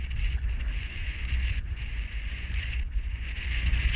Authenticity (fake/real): fake